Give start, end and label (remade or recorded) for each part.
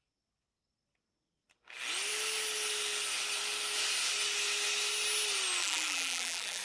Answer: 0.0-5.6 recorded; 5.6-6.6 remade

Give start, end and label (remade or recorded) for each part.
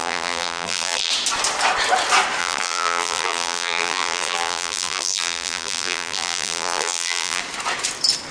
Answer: 0.0-1.1 remade; 1.1-2.4 recorded; 2.4-7.4 remade; 7.4-8.3 recorded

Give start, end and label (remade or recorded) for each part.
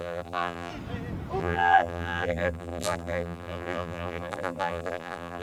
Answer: 0.0-0.7 remade; 0.7-1.4 recorded; 1.4-5.4 remade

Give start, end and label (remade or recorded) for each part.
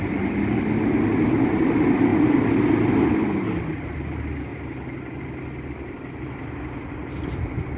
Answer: 0.0-7.8 recorded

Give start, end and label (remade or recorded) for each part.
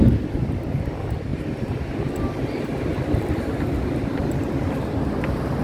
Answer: 0.0-5.6 recorded